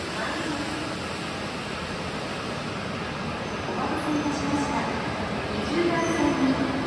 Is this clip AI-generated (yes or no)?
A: no